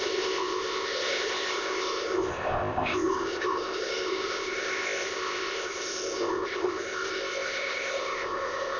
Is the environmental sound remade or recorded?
remade